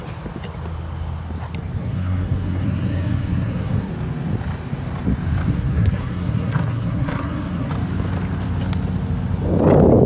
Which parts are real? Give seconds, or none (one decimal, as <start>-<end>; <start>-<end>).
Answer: 0.0-1.8; 3.9-5.5; 7.7-10.1